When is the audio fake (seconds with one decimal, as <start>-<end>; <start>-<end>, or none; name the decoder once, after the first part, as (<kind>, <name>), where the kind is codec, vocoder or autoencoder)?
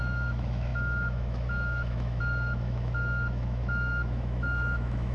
0.0-5.1 (autoencoder, DAC-VAE)